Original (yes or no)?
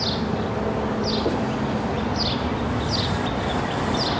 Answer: yes